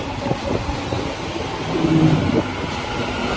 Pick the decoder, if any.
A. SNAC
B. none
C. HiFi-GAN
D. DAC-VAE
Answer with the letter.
B